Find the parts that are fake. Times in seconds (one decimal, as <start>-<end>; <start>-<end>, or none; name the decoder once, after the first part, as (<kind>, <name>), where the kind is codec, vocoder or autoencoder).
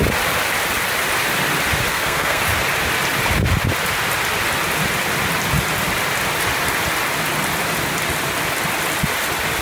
1.9-2.4 (codec, SNAC)